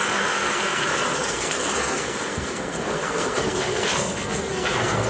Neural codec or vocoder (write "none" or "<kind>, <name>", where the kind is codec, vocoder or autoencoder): codec, SNAC